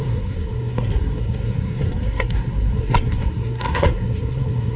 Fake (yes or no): yes